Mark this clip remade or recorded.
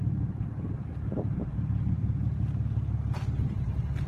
remade